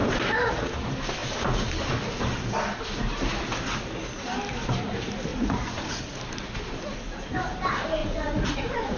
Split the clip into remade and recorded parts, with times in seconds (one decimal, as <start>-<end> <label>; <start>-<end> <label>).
0.0-5.3 recorded; 5.3-6.2 remade; 6.2-8.0 recorded; 8.0-9.0 remade